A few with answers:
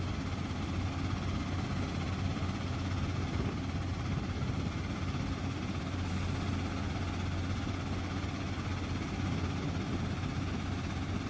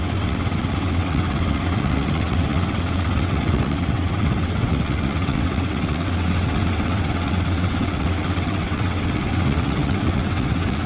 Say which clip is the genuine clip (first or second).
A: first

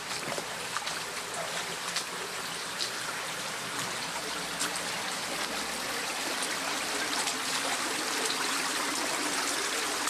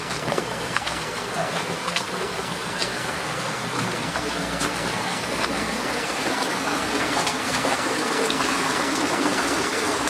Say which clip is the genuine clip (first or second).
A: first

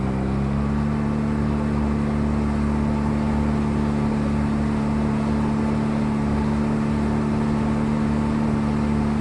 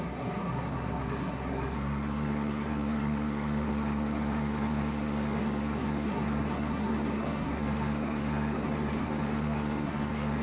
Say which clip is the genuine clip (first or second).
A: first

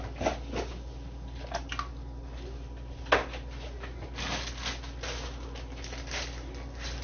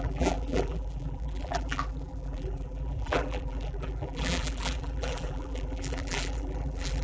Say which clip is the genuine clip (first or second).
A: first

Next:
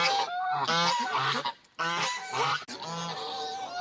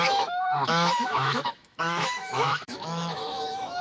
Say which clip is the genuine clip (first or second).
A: first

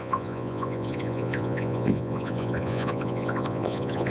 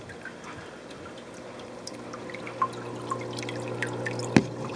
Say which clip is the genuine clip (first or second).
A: second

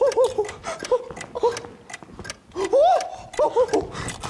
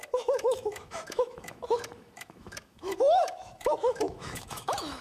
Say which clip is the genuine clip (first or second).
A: first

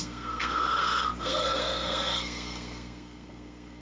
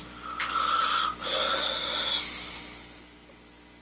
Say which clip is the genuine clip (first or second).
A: second